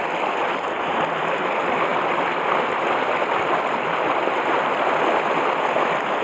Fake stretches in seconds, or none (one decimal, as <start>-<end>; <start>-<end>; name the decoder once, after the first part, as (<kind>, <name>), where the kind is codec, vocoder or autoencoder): none